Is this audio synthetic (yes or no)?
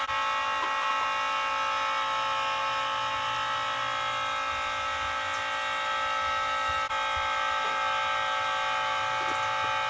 no